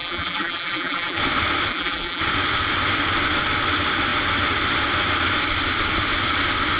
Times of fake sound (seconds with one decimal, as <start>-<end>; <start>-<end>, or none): 0.0-1.2; 1.7-2.2